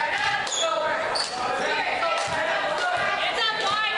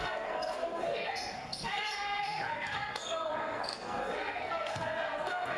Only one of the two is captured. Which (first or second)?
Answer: first